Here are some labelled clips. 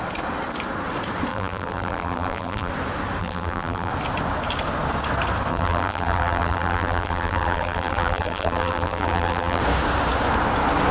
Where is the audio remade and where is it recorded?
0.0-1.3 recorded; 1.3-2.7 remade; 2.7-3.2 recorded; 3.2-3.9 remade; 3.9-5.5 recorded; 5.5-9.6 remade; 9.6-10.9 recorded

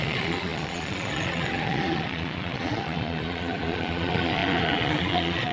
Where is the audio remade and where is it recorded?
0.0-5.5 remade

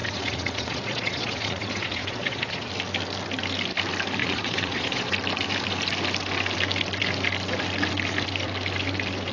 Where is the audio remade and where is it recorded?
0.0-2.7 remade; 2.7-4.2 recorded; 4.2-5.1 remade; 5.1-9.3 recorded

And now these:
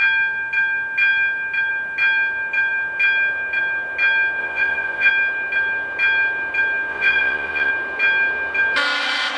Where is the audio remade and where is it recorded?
0.0-4.4 recorded; 4.4-5.1 remade; 5.1-6.9 recorded; 6.9-7.7 remade; 7.7-9.4 recorded

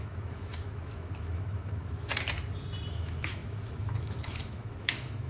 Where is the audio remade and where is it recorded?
0.0-2.1 remade; 2.1-2.9 recorded; 2.9-5.3 remade

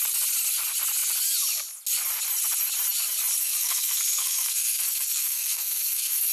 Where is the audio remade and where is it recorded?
0.0-3.4 recorded; 3.4-6.3 remade

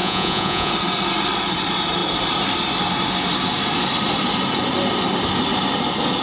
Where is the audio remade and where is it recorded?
0.0-0.7 remade; 0.7-6.2 recorded

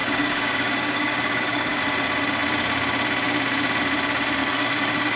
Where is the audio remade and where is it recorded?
0.0-1.8 remade; 1.8-4.4 recorded; 4.4-5.2 remade